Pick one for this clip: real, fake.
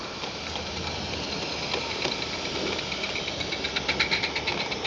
real